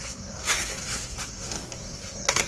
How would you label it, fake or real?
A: fake